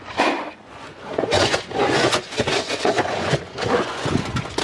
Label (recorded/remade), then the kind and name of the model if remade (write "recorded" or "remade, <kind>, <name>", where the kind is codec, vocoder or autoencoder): remade, vocoder, Vocos